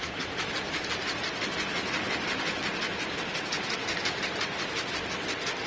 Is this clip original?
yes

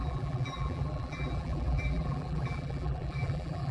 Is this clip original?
no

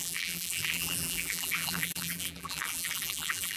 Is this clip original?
no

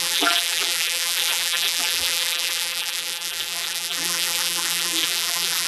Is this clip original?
no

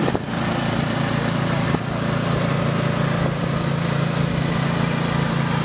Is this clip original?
yes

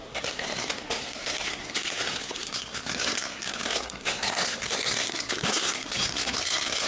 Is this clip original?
no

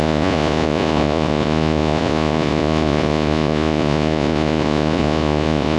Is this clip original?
no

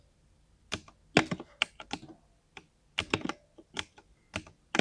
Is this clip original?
yes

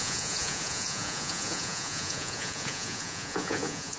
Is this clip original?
no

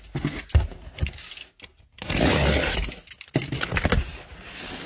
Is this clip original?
yes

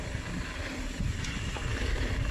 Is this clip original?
yes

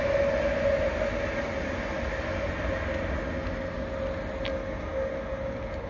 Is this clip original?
yes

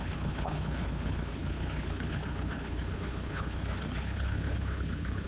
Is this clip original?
no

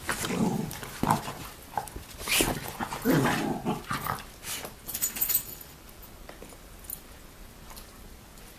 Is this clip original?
yes